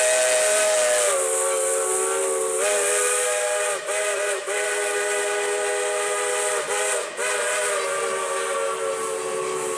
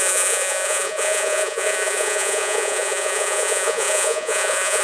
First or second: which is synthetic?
second